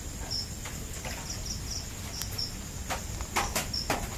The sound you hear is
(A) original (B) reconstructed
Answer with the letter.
A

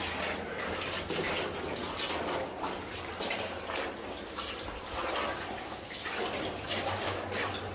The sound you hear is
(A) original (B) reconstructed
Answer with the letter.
A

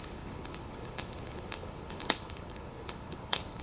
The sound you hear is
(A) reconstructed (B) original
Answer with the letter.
A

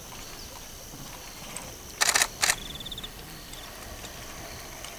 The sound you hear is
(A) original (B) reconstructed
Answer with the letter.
B